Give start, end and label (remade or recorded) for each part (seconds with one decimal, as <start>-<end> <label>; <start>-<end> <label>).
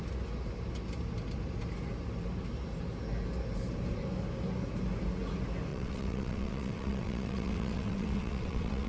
0.0-5.7 recorded; 5.7-8.9 remade